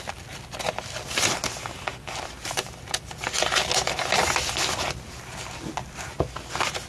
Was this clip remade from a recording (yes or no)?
no